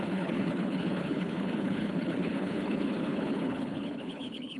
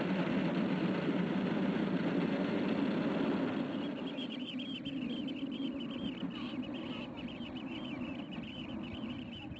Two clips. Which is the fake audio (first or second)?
first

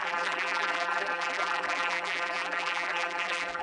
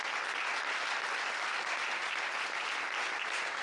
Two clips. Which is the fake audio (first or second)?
first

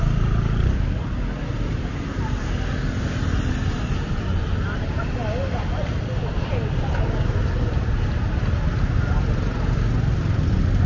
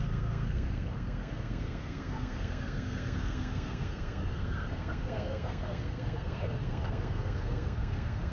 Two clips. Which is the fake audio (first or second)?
second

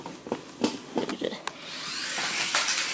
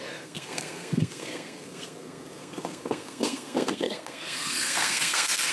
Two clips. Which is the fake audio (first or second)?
second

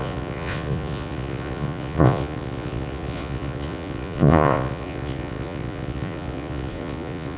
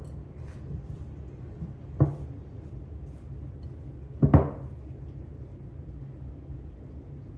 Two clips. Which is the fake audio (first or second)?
first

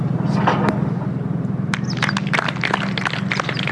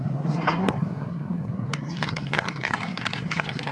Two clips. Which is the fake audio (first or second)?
second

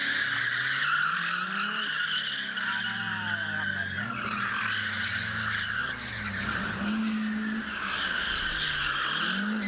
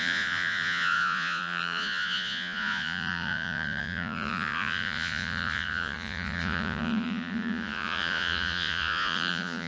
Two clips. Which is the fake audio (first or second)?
second